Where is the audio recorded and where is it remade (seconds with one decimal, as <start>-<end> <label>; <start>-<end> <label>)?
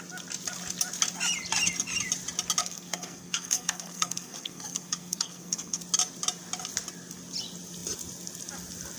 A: 0.0-2.6 recorded; 2.6-5.8 remade; 5.8-9.0 recorded